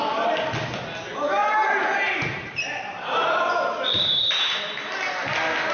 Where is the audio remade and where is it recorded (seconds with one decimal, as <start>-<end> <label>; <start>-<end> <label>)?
0.0-1.4 recorded; 1.4-4.8 remade; 4.8-5.7 recorded

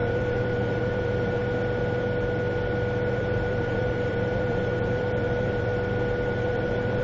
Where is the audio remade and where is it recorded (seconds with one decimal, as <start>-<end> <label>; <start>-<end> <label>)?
0.0-1.4 remade; 1.4-3.1 recorded; 3.1-5.7 remade; 5.7-6.3 recorded; 6.3-7.0 remade

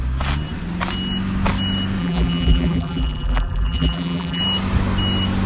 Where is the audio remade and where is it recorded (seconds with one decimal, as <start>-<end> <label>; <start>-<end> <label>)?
0.0-2.0 recorded; 2.0-4.4 remade; 4.4-5.5 recorded

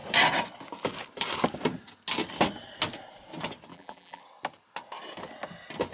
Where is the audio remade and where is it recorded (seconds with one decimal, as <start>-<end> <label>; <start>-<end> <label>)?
0.0-3.7 recorded; 3.7-4.2 remade; 4.2-5.9 recorded

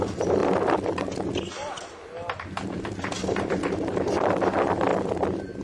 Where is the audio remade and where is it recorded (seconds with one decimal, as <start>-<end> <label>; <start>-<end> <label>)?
0.0-5.6 recorded

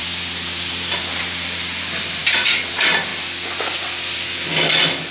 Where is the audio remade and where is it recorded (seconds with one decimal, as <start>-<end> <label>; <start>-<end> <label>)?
0.0-2.2 remade; 2.2-2.7 recorded; 2.7-3.1 remade; 3.1-5.1 recorded

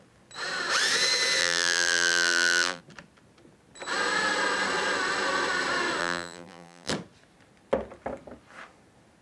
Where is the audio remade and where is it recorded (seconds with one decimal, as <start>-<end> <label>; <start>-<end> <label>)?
0.0-1.4 recorded; 1.4-2.8 remade; 2.8-6.0 recorded; 6.0-6.9 remade; 6.9-9.2 recorded

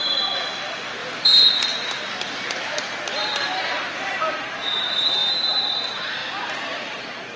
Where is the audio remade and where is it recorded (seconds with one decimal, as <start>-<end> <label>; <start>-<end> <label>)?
0.0-1.0 recorded; 1.0-4.5 remade; 4.5-6.2 recorded; 6.2-7.0 remade; 7.0-7.4 recorded